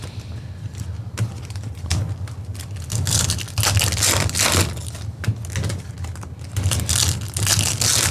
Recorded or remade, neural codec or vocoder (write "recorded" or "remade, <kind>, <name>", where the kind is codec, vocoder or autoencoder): recorded